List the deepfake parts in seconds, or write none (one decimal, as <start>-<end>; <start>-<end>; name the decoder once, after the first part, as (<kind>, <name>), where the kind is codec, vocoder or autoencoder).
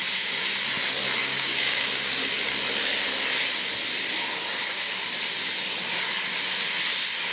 1.2-1.9 (codec, DAC)